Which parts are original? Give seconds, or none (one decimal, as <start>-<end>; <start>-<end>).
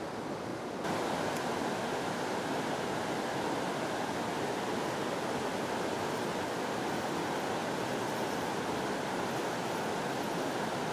0.0-10.9